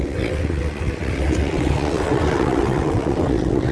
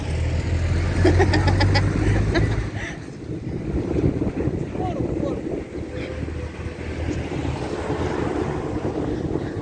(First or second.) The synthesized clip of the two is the first